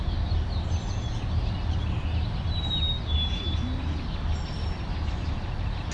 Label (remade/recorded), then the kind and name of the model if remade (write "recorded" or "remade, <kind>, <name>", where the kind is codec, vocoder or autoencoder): recorded